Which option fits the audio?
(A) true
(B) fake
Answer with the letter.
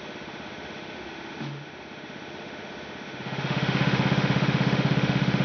B